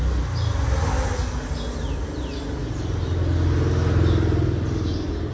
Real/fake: real